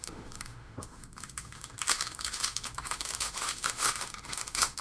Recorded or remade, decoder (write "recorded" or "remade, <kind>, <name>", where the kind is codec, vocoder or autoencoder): remade, autoencoder, DAC-VAE